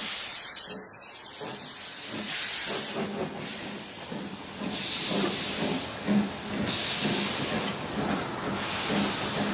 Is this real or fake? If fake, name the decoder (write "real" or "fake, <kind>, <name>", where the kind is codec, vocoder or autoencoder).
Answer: real